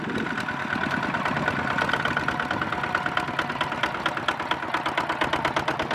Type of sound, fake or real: real